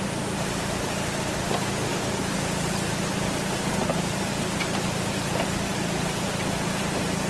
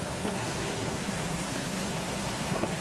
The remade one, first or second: second